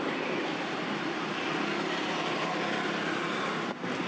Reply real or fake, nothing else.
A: real